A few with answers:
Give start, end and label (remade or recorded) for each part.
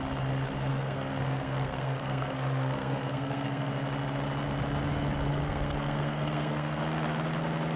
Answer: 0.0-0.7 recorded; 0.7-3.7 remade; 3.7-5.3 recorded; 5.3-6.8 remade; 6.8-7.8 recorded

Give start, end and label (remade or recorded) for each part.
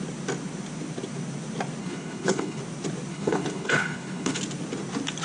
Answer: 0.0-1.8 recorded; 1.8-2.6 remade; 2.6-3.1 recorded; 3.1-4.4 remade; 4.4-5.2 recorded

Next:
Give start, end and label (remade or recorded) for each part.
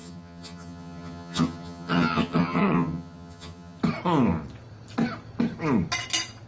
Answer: 0.0-3.8 remade; 3.8-6.5 recorded